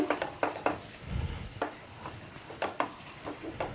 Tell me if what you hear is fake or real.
real